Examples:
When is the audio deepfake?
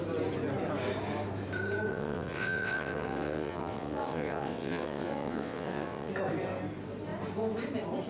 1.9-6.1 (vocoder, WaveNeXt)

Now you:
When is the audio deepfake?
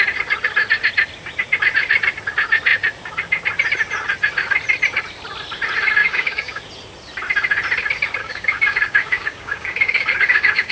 6.0-6.6 (codec, DAC); 8.2-10.7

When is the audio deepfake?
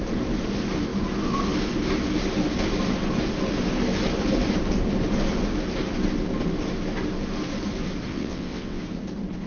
8.1-8.8 (vocoder, WaveNeXt)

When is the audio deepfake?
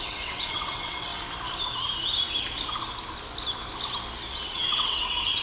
0.0-1.1 (vocoder, WaveNeXt); 4.3-5.4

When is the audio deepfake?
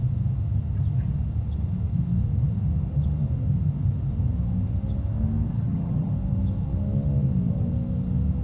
5.5-6.1 (vocoder, HiFi-GAN)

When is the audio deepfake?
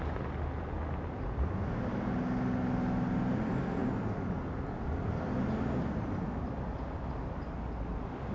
none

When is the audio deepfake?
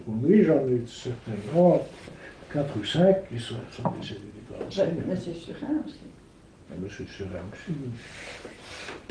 5.3-6.5 (autoencoder, DAC-VAE)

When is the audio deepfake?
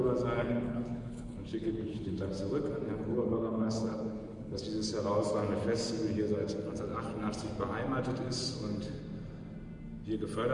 0.4-2.3 (codec, HILCodec); 3.1-4.6